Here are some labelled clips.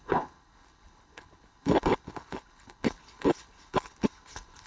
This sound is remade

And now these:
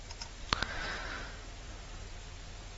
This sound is remade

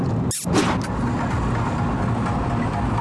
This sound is recorded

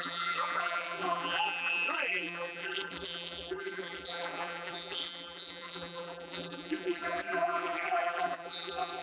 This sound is remade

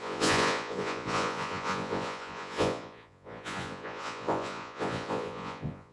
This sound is remade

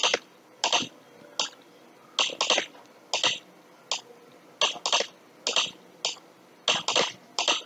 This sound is recorded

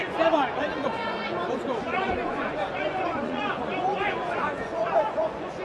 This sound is remade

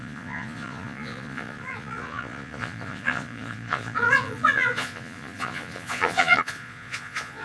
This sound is remade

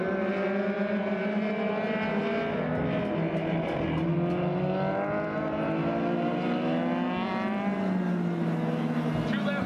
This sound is recorded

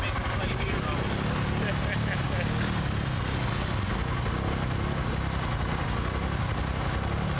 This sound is recorded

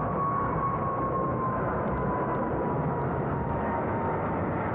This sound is recorded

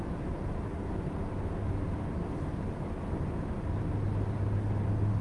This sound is recorded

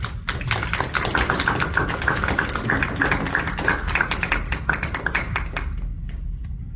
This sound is recorded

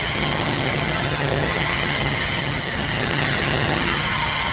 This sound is remade